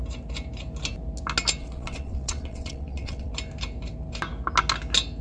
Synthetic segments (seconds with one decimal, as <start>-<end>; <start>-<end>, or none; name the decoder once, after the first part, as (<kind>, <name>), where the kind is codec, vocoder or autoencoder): 1.6-3.3 (vocoder, WaveNeXt)